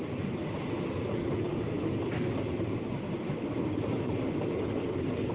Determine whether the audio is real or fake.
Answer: real